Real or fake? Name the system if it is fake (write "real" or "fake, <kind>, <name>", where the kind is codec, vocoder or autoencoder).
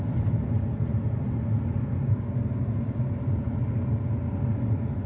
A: real